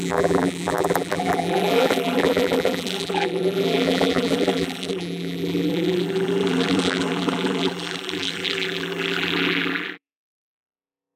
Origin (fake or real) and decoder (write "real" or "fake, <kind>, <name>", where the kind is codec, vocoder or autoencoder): fake, vocoder, BigVGAN v2